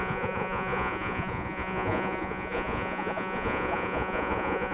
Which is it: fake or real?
fake